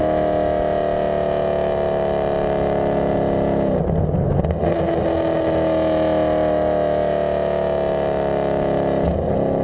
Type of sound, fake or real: real